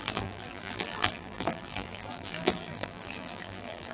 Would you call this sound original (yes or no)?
no